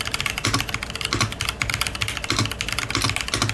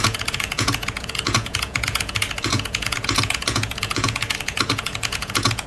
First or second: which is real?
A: first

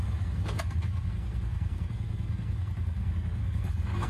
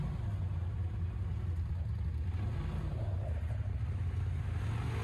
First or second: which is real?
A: second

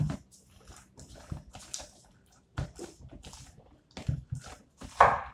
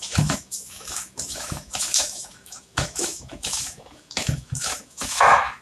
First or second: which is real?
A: first